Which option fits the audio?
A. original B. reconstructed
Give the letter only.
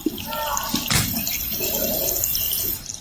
A